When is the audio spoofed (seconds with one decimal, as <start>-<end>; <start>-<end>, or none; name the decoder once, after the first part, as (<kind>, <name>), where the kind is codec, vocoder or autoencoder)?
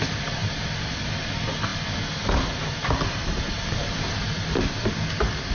0.4-1.0 (vocoder, BigVGAN v2)